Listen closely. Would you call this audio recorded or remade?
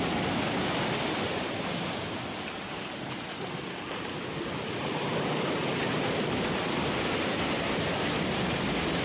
recorded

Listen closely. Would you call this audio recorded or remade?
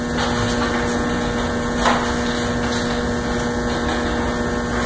recorded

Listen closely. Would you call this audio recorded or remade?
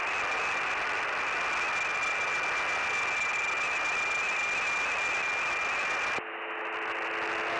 recorded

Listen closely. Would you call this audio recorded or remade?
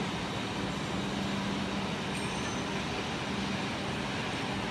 recorded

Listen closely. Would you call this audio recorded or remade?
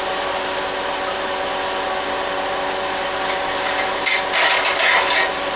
recorded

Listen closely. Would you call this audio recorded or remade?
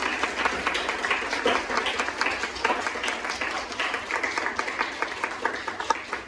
recorded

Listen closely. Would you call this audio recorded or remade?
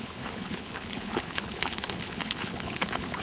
remade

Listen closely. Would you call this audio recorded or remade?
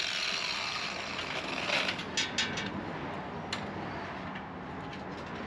recorded